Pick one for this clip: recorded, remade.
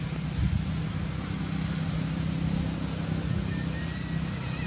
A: recorded